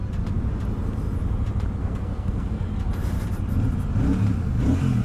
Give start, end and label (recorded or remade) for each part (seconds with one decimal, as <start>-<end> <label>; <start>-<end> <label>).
0.0-1.8 recorded; 1.8-2.7 remade; 2.7-5.0 recorded